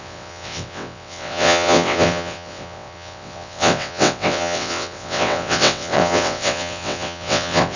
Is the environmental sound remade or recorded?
remade